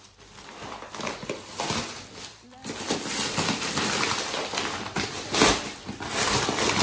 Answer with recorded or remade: recorded